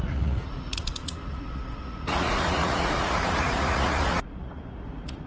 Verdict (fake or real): fake